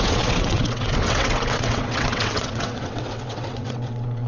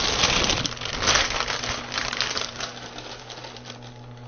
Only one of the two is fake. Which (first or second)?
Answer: first